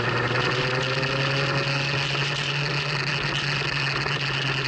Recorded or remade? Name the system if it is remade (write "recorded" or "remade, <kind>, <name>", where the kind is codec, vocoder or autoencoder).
recorded